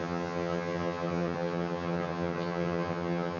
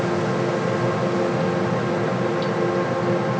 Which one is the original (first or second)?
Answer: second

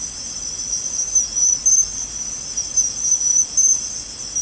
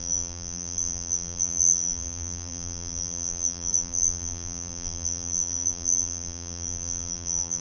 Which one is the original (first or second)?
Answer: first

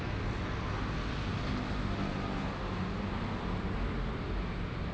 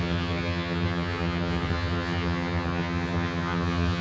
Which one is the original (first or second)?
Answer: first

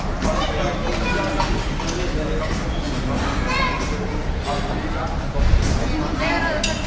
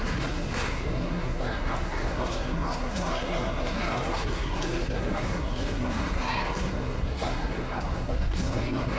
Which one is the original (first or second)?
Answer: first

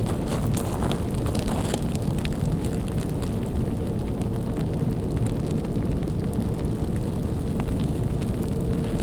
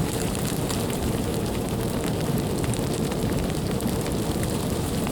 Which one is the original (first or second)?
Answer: first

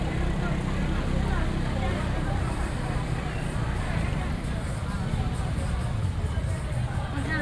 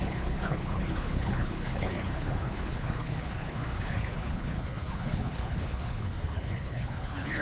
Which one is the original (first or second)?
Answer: first